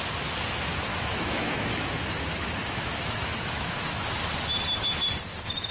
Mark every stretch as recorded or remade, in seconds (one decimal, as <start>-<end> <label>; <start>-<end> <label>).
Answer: 0.0-0.9 recorded; 0.9-4.1 remade; 4.1-5.7 recorded